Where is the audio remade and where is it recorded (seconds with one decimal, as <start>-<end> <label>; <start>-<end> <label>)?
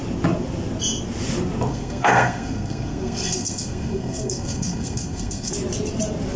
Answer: 0.0-1.7 recorded; 1.7-5.5 remade; 5.5-6.4 recorded